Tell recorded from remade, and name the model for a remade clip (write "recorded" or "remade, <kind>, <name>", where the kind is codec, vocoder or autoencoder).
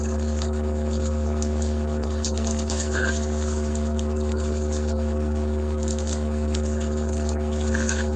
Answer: remade, codec, SNAC